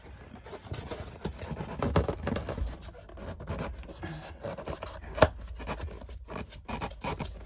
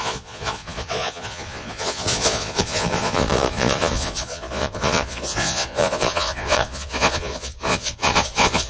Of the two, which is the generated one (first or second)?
second